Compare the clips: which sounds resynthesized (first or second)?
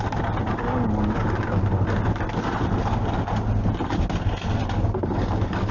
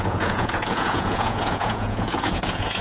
second